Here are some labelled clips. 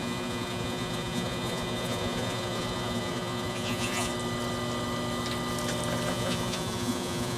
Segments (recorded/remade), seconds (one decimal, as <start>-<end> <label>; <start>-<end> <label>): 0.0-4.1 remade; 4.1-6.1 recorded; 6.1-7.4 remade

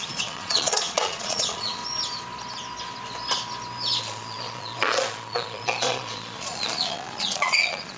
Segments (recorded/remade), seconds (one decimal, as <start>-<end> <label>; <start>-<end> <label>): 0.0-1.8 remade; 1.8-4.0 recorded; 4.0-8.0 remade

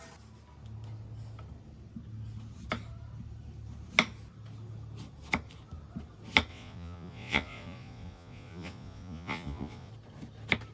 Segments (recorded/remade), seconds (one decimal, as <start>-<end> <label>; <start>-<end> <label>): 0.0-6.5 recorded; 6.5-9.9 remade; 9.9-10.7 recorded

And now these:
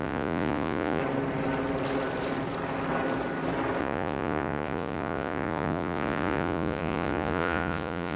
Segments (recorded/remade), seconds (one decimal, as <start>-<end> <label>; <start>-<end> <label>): 0.0-1.0 remade; 1.0-3.8 recorded; 3.8-8.2 remade

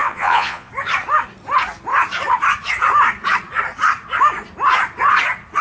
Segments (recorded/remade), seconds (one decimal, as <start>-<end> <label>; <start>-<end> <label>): 0.0-0.7 remade; 0.7-5.6 recorded